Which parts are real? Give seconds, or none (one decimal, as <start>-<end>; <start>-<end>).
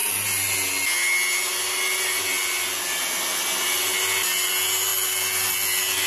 0.0-6.1